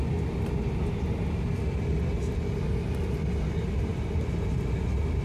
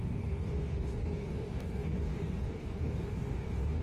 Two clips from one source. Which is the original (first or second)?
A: first